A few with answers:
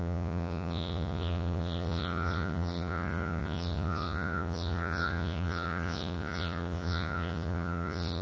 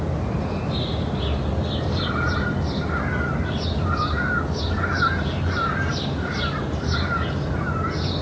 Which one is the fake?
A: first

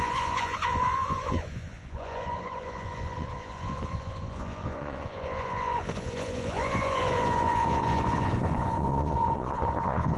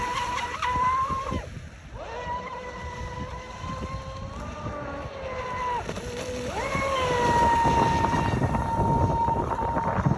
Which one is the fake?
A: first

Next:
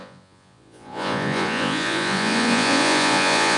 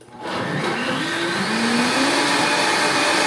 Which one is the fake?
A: first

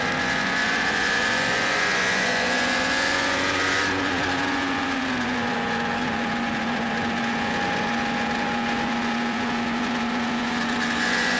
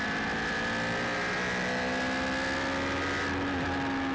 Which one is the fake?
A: first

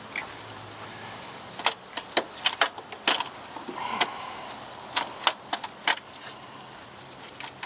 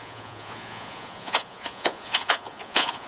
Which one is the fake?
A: second